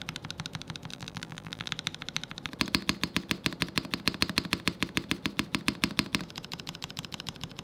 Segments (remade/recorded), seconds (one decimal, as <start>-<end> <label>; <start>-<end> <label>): 0.0-0.9 recorded; 0.9-1.7 remade; 1.7-7.6 recorded